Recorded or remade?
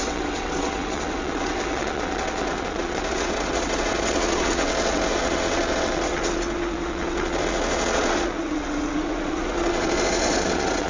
remade